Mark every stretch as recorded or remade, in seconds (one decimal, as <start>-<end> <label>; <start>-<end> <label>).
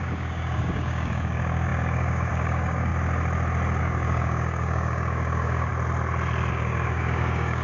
0.0-2.9 remade; 2.9-3.8 recorded; 3.8-5.7 remade; 5.7-6.5 recorded; 6.5-7.6 remade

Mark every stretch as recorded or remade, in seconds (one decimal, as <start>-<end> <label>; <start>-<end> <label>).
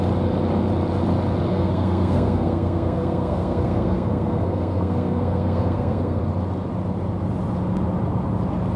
0.0-1.5 recorded; 1.5-6.2 remade; 6.2-8.8 recorded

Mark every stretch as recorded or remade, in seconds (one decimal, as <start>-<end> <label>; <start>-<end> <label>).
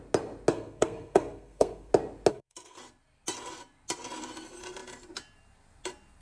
0.0-0.5 recorded; 0.5-1.9 remade; 1.9-2.3 recorded; 2.3-2.8 remade; 2.8-6.2 recorded